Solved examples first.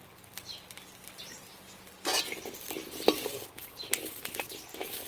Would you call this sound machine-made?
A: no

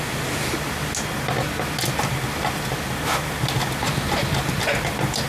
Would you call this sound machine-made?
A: no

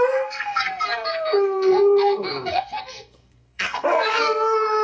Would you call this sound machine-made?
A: yes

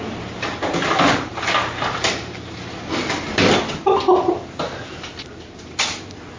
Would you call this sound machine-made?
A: no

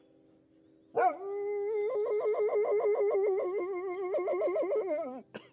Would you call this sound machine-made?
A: no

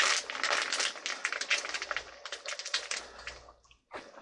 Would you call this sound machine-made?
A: no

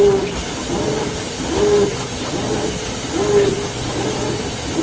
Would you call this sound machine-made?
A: no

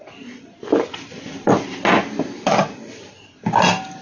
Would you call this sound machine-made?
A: no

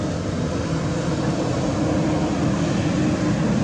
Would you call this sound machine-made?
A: no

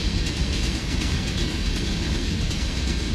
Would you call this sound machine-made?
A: yes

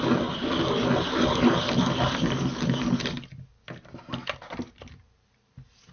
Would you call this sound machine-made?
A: no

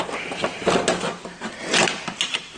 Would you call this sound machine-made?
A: no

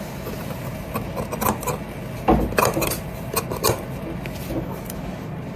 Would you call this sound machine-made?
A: no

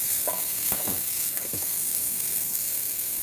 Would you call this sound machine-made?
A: yes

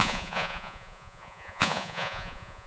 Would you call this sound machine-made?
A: yes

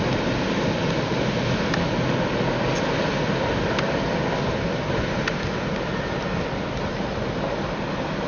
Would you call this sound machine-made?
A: no